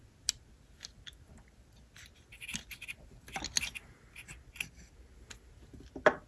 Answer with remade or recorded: recorded